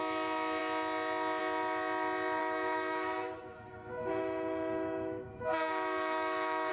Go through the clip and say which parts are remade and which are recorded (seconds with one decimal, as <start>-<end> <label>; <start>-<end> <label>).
0.0-2.4 recorded; 2.4-6.7 remade